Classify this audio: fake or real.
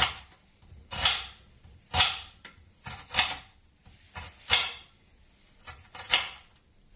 real